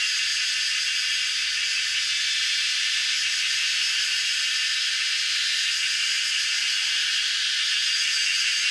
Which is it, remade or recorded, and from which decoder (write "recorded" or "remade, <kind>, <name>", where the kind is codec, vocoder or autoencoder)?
recorded